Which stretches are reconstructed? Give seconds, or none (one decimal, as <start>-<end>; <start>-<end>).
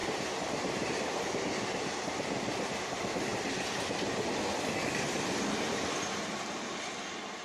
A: 0.0-0.9